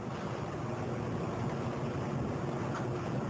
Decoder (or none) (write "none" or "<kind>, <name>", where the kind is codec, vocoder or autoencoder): none